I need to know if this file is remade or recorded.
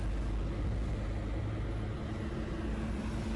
recorded